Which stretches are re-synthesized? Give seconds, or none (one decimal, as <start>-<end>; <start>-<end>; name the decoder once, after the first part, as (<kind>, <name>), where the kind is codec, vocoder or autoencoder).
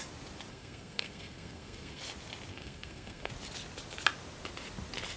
0.5-2.0 (codec, SNAC); 2.5-3.3